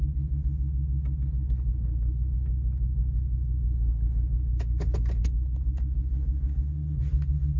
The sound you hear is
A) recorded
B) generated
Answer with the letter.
A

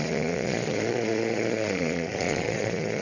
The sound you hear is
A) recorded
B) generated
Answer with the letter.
B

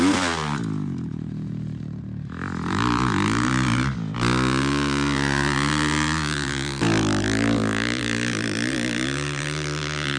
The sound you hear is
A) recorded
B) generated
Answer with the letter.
A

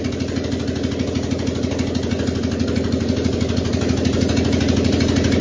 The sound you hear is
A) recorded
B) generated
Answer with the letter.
A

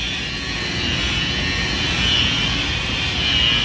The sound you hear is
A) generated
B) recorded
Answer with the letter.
B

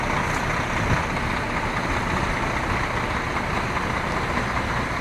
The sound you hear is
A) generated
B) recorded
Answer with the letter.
B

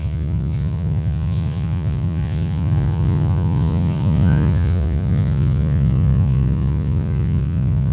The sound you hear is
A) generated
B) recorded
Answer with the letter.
A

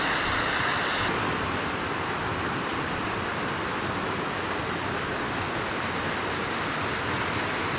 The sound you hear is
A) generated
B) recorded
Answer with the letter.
B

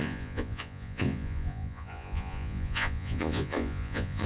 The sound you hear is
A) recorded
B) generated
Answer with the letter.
B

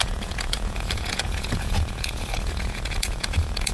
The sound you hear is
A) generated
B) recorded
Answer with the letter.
A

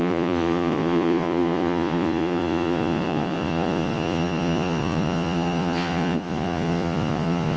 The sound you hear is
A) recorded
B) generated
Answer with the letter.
B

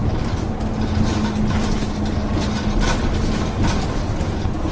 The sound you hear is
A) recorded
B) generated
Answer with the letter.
A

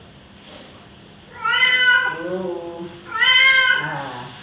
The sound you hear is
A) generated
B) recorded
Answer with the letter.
B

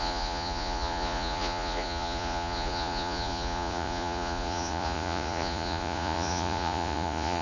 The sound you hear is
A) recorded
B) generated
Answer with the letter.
B